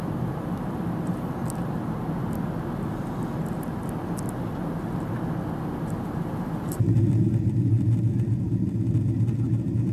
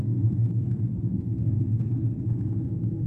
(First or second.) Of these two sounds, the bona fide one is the first